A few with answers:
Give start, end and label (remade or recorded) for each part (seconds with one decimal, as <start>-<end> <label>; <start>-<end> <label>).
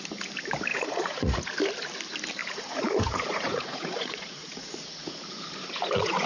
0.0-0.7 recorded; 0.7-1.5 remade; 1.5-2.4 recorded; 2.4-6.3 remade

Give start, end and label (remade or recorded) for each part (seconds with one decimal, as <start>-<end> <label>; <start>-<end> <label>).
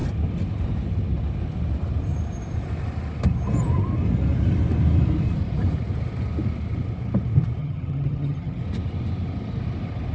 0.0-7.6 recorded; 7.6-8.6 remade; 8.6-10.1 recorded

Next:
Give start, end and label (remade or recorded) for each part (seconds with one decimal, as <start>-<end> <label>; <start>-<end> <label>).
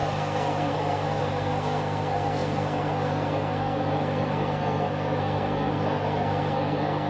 0.0-7.1 remade